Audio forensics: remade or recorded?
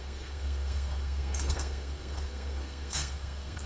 remade